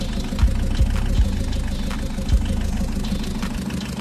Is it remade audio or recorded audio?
recorded